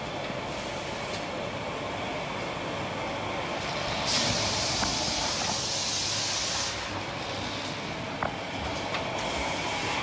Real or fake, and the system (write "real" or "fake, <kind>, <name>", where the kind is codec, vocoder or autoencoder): real